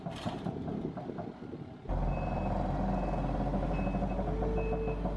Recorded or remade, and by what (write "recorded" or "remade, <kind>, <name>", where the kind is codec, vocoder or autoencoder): recorded